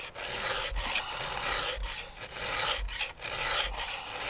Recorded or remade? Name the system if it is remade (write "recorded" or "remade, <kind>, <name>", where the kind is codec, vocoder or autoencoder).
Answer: recorded